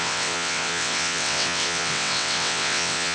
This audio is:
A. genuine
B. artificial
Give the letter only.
B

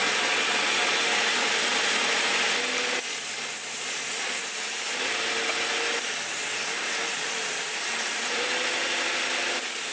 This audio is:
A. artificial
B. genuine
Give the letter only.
B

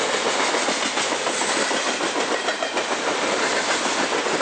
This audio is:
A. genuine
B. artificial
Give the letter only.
A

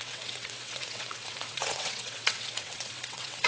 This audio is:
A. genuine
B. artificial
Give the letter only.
B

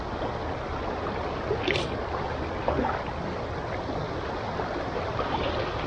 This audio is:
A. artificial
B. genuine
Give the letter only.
B